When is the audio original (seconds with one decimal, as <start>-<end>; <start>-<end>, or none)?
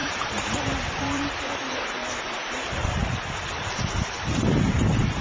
3.0-3.5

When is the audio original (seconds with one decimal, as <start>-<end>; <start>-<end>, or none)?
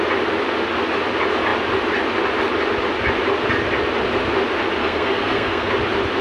0.0-4.8; 5.7-6.2